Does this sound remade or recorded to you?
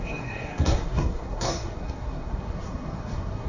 remade